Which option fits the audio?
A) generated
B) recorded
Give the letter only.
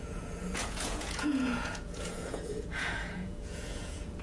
A